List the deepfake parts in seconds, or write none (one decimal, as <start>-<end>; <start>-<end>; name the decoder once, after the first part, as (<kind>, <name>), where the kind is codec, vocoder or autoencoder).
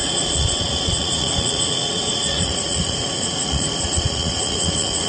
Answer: 0.0-5.1 (vocoder, Vocos)